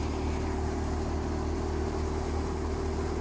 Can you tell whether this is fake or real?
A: real